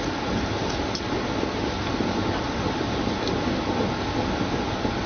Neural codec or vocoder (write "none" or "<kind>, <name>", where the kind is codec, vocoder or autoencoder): none